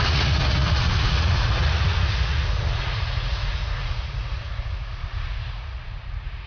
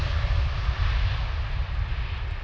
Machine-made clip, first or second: first